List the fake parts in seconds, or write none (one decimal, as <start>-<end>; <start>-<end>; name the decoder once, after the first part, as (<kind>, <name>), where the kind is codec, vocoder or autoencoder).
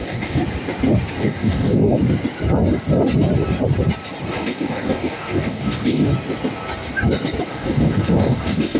0.0-0.4 (codec, DAC); 1.1-2.0; 4.3-6.1; 7.5-8.8